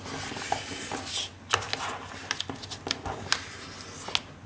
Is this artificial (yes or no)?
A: no